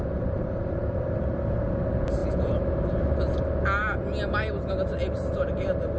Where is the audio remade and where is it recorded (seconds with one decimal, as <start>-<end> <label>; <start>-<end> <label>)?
0.0-1.1 remade; 1.1-6.0 recorded

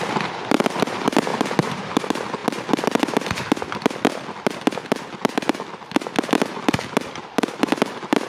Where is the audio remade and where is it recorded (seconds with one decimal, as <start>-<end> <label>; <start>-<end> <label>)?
0.0-8.3 recorded

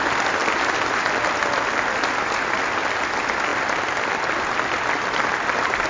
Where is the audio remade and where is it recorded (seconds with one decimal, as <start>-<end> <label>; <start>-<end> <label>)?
0.0-5.9 recorded

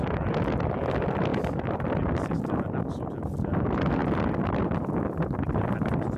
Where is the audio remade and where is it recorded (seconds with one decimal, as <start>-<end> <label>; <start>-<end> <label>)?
0.0-6.2 recorded

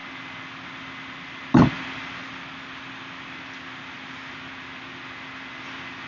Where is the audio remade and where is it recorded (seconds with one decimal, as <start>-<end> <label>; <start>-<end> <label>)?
0.0-6.1 recorded

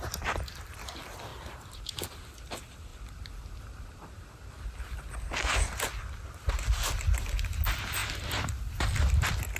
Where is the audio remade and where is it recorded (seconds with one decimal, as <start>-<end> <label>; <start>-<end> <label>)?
0.0-9.6 recorded

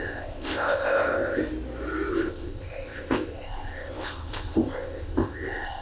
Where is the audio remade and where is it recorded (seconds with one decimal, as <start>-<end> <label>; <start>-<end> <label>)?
0.0-1.4 remade; 1.4-2.1 recorded; 2.1-5.8 remade

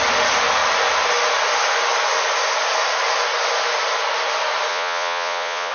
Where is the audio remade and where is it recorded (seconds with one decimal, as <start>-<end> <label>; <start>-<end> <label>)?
0.0-4.7 recorded; 4.7-5.7 remade